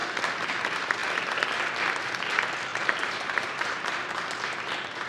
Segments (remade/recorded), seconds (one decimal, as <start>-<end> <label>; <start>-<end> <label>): 0.0-2.7 recorded; 2.7-4.3 remade; 4.3-5.1 recorded